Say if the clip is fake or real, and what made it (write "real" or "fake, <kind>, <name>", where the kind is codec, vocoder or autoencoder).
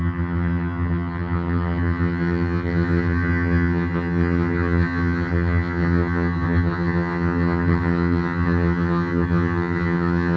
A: fake, vocoder, HiFi-GAN